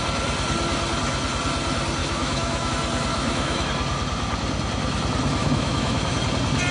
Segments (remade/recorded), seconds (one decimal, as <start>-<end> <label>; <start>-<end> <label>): 0.0-2.0 recorded; 2.0-2.7 remade; 2.7-3.1 recorded; 3.1-3.7 remade; 3.7-5.4 recorded; 5.4-6.1 remade; 6.1-6.7 recorded

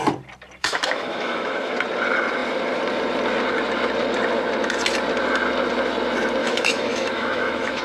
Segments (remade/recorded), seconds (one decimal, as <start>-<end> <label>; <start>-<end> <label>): 0.0-0.6 recorded; 0.6-1.7 remade; 1.7-6.4 recorded; 6.4-7.8 remade

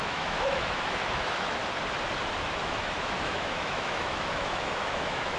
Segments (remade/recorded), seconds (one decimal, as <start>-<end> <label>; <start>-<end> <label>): 0.0-1.6 remade; 1.6-2.6 recorded; 2.6-5.4 remade

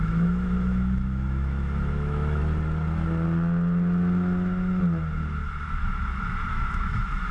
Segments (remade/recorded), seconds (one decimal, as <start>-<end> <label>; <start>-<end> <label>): 0.0-2.4 remade; 2.4-6.5 recorded; 6.5-7.3 remade

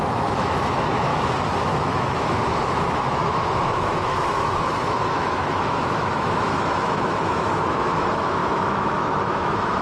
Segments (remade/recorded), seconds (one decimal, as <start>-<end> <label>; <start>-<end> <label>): 0.0-1.1 remade; 1.1-1.7 recorded; 1.7-9.8 remade

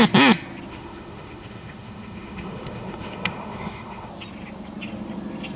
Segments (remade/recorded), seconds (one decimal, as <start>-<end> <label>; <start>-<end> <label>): 0.0-0.7 recorded; 0.7-4.1 remade; 4.1-5.6 recorded